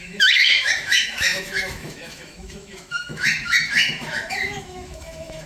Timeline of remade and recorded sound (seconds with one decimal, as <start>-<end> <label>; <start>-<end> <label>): 0.0-5.5 remade